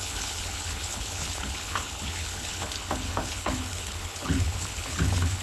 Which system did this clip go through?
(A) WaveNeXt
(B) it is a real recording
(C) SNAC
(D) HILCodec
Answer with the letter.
D